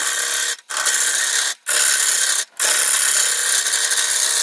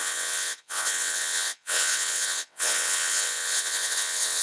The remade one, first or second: second